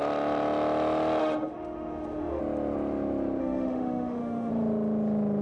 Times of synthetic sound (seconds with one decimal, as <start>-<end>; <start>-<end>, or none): 1.2-2.4; 3.4-4.5